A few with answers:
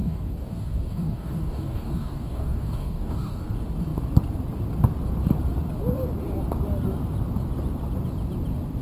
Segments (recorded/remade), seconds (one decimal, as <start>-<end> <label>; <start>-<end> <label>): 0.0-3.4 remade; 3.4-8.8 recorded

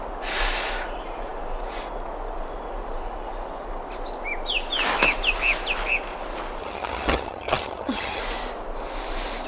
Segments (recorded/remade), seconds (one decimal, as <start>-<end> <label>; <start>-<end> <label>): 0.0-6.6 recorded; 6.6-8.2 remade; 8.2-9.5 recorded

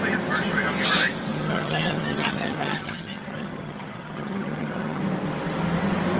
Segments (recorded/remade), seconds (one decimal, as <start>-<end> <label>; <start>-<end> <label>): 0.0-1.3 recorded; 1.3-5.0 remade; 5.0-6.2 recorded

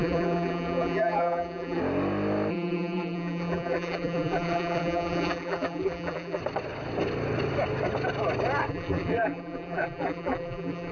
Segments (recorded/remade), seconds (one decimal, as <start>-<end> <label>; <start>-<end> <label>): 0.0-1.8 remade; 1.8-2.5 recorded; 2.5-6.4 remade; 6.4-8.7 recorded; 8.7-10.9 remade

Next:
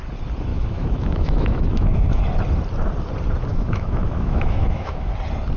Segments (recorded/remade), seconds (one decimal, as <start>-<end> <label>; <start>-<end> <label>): 0.0-0.5 recorded; 0.5-2.2 remade; 2.2-3.5 recorded; 3.5-5.1 remade; 5.1-5.6 recorded